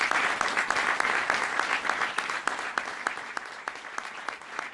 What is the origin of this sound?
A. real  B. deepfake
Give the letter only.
A